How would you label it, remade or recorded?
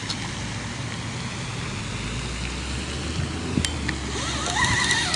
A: recorded